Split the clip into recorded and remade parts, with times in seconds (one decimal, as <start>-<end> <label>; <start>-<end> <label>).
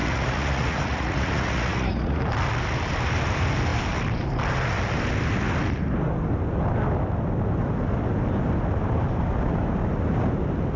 0.0-2.2 remade; 2.2-10.8 recorded